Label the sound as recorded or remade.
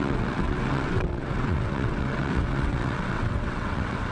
remade